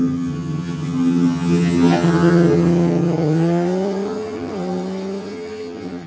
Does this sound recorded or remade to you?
remade